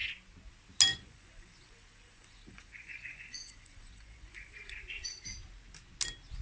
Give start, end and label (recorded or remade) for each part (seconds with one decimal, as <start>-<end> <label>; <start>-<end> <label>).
0.0-0.9 recorded; 0.9-4.7 remade; 4.7-6.4 recorded